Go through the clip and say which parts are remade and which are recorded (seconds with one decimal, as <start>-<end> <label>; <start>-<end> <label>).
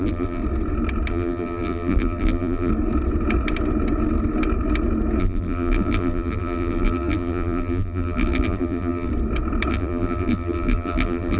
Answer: 0.0-0.4 remade; 0.4-1.1 recorded; 1.1-2.7 remade; 2.7-5.2 recorded; 5.2-9.1 remade; 9.1-9.7 recorded; 9.7-11.4 remade